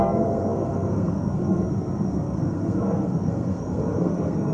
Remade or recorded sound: remade